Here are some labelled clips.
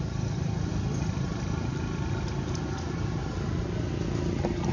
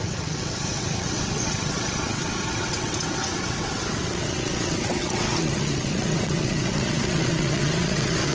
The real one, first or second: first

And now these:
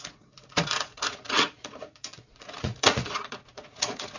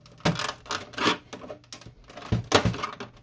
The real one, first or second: second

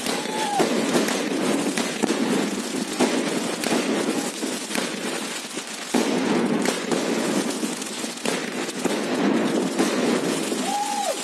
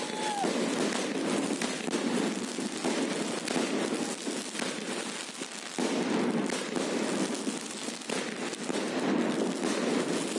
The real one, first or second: second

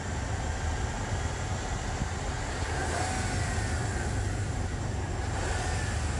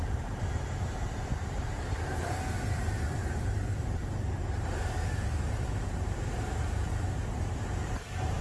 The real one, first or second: first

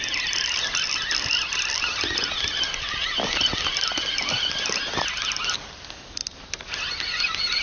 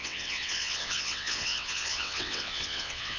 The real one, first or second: first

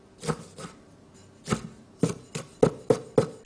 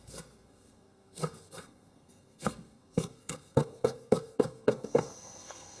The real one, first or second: first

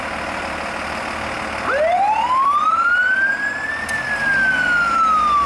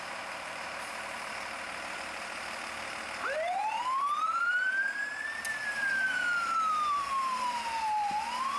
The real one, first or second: first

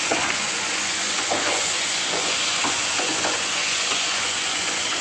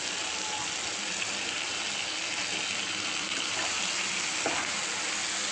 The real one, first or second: second